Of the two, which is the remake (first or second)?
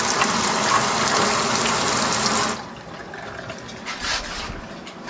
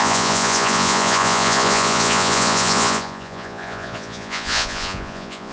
second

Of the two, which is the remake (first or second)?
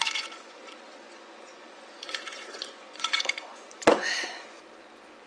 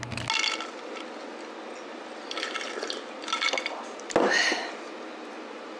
first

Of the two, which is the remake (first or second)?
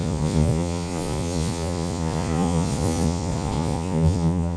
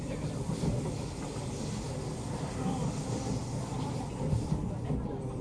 first